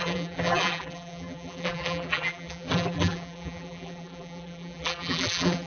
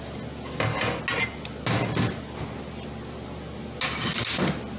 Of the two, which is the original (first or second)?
second